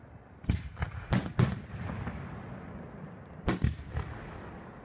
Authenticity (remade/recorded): recorded